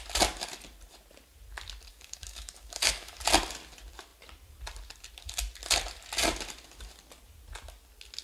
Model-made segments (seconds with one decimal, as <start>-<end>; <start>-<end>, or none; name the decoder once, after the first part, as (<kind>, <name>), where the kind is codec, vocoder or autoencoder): 1.9-3.2 (codec, DAC)